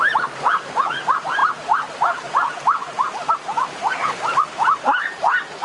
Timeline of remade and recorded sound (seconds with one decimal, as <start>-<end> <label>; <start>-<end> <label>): 0.0-5.6 recorded